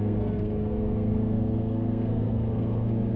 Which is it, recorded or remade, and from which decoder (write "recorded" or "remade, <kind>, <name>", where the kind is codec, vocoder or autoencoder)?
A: remade, codec, SNAC